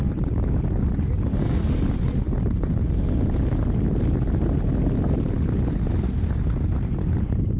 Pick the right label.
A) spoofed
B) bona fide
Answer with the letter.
B